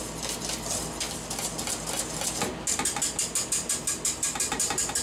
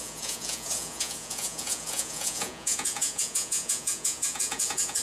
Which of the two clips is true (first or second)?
first